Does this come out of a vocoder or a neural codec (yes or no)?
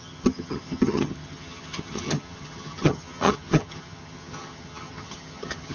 yes